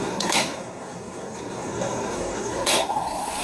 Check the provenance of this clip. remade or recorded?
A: remade